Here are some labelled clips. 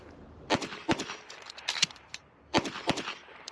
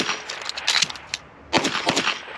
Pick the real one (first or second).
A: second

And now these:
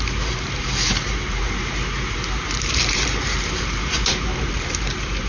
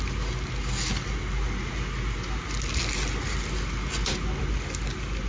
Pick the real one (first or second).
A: second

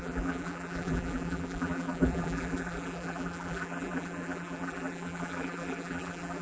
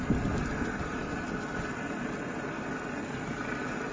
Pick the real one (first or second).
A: second